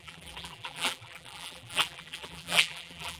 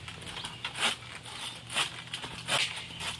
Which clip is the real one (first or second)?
second